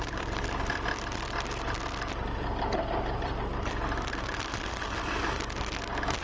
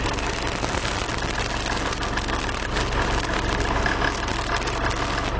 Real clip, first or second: second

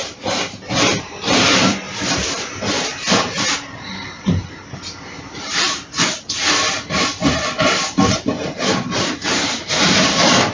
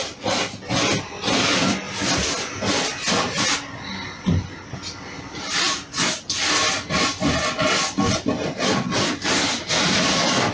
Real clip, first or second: second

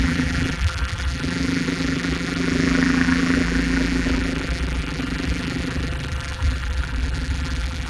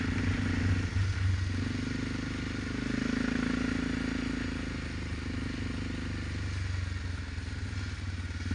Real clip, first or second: second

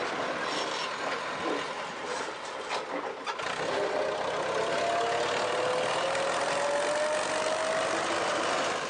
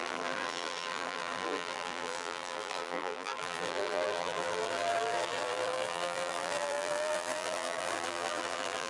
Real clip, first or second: first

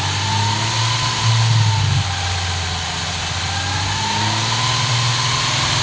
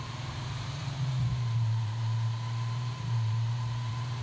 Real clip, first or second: first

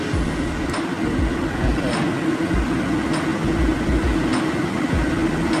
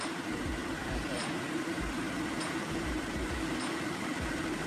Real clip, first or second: first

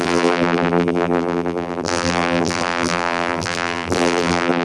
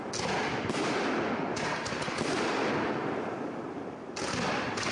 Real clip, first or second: second